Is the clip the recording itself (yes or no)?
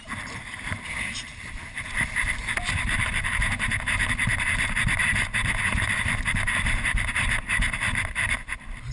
yes